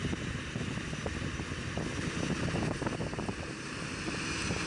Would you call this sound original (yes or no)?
yes